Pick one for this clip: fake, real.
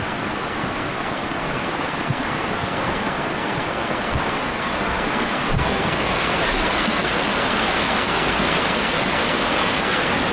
fake